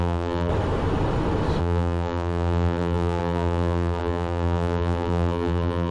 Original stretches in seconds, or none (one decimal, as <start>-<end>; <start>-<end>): 0.5-1.6